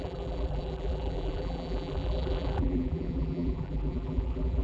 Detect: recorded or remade remade